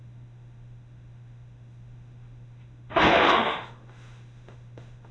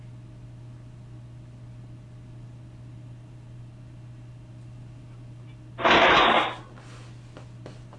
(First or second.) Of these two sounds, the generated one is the first